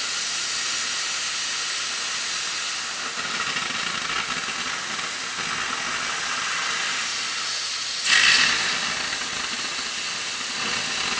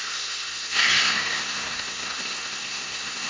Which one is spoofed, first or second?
second